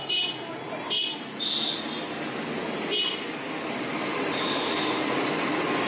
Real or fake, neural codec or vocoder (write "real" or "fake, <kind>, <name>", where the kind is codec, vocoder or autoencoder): real